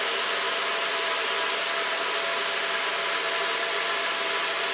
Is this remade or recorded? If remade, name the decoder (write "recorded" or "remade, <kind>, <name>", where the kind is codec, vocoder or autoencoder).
recorded